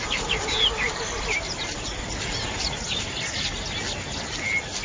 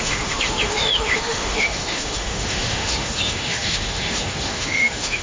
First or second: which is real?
first